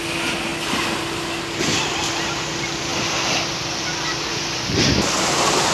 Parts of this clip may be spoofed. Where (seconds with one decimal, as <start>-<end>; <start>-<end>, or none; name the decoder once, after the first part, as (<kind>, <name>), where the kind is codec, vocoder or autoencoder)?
none